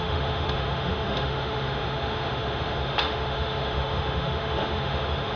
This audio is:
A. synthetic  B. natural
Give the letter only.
A